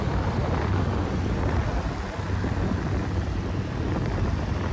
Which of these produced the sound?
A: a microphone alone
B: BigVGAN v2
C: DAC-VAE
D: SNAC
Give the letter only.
A